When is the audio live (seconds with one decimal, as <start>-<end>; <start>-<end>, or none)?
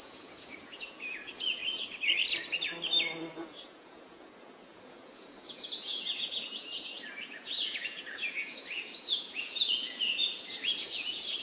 1.6-3.3